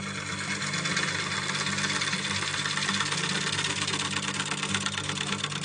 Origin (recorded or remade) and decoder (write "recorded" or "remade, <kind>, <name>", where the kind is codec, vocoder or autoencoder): recorded